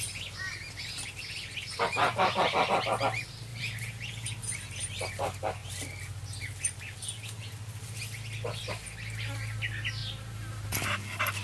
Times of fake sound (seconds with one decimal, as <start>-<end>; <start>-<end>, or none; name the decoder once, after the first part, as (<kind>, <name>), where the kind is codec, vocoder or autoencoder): 3.5-5.0 (vocoder, BigVGAN v2); 10.0-10.7